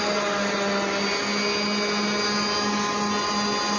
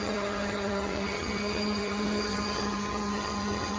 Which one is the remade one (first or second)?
second